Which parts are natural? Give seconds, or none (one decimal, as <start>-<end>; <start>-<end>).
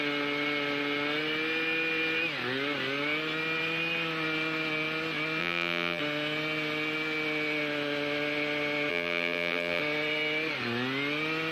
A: 0.0-5.4; 6.0-8.9; 9.8-11.5